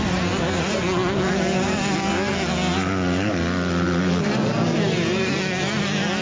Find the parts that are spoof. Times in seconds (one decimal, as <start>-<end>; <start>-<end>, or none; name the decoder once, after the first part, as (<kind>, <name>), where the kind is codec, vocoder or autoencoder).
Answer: none